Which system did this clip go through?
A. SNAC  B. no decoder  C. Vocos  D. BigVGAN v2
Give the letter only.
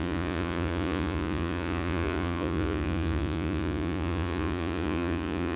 C